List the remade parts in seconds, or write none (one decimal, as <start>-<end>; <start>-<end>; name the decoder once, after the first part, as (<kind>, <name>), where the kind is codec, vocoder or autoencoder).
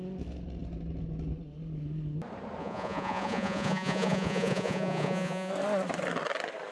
2.6-5.5 (vocoder, Vocos)